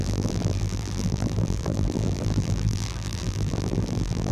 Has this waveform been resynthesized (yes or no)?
yes